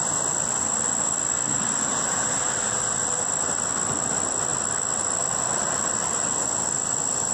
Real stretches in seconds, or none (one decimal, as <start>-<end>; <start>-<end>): 0.0-7.3